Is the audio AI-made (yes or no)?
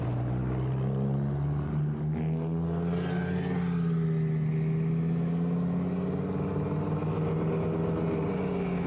no